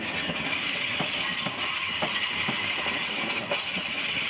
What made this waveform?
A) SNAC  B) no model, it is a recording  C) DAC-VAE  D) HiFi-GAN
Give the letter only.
B